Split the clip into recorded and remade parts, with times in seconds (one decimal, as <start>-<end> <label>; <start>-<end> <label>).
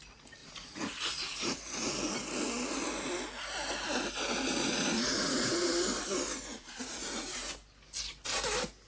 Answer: 0.0-0.4 recorded; 0.4-1.9 remade; 1.9-4.6 recorded; 4.6-5.7 remade; 5.7-6.6 recorded; 6.6-7.5 remade; 7.5-8.9 recorded